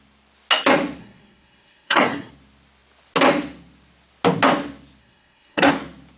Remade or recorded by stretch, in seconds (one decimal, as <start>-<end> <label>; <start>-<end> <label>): 0.0-1.0 recorded; 1.0-2.3 remade; 2.3-5.0 recorded; 5.0-5.7 remade; 5.7-6.2 recorded